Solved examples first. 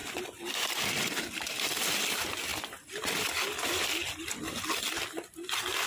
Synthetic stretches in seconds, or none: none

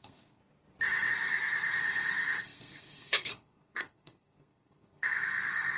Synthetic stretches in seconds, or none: 0.0-0.4 (codec, SNAC); 1.1-5.8

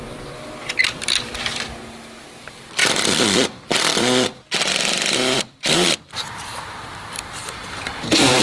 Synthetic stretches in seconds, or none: 0.0-8.4 (vocoder, BigVGAN v2)

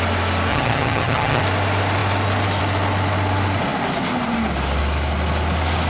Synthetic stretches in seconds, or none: 0.5-1.4 (vocoder, HiFi-GAN)